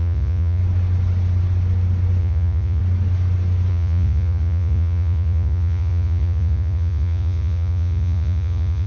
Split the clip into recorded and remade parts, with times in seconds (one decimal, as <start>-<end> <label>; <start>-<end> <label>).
0.0-0.6 remade; 0.6-2.2 recorded; 2.2-2.8 remade; 2.8-3.7 recorded; 3.7-8.9 remade